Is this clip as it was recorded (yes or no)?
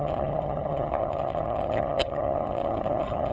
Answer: no